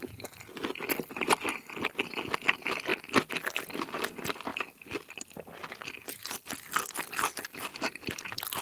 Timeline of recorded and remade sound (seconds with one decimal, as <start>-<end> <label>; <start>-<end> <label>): 0.0-2.9 recorded; 2.9-3.7 remade; 3.7-7.7 recorded; 7.7-8.6 remade